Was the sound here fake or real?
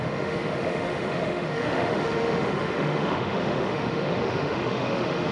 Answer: fake